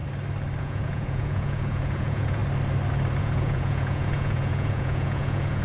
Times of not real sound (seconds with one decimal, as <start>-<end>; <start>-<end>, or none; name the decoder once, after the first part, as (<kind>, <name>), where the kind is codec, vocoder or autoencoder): 0.6-2.4 (vocoder, Vocos); 3.2-5.6